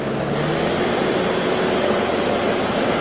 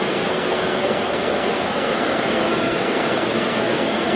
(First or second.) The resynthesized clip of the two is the second